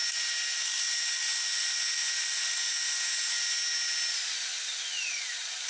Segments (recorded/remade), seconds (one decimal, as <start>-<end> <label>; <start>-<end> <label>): 0.0-5.7 recorded